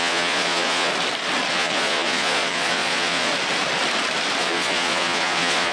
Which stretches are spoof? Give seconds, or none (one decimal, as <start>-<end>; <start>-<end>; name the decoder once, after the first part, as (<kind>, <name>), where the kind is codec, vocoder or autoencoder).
0.0-0.9 (vocoder, Vocos); 1.5-3.3; 4.4-5.7